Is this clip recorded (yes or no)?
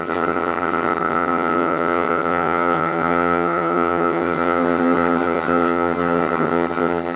no